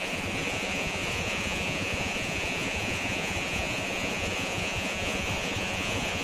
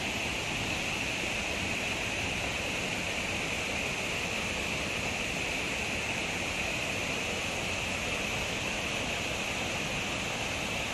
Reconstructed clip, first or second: first